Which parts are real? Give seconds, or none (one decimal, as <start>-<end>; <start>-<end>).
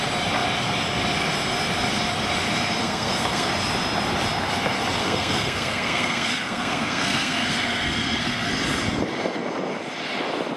0.0-2.8; 3.5-5.0; 8.5-10.6